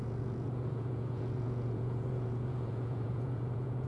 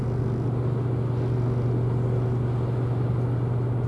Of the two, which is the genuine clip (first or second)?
second